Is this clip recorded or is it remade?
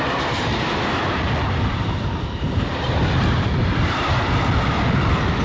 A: recorded